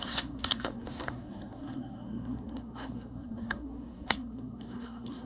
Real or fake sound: fake